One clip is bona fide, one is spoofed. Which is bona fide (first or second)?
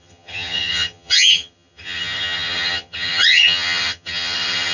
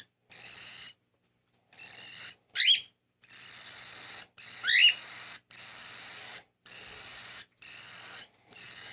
second